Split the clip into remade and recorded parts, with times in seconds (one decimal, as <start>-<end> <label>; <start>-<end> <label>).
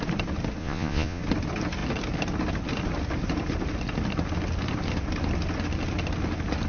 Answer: 0.0-0.6 recorded; 0.6-1.2 remade; 1.2-6.7 recorded